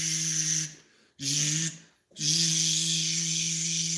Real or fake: real